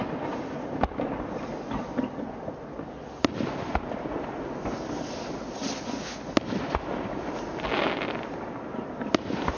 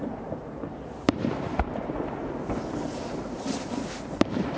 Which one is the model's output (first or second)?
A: second